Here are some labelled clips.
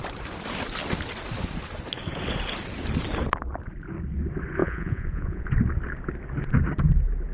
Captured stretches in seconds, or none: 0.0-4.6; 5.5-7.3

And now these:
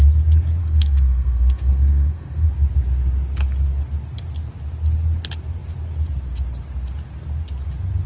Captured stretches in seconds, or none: 0.0-0.6; 2.5-8.1

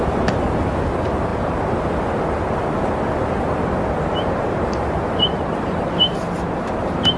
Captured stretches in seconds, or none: 0.0-1.3; 1.8-4.1

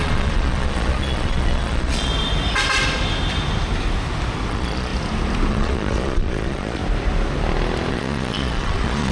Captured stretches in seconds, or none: 2.1-4.5; 4.9-5.5; 6.8-7.9

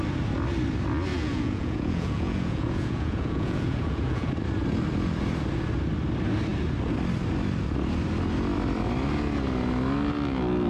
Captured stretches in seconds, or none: 0.0-1.1; 4.3-10.7